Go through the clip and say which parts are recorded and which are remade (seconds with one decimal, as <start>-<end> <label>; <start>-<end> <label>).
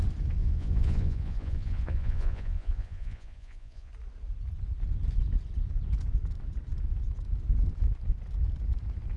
0.0-0.4 recorded; 0.4-3.9 remade; 3.9-9.2 recorded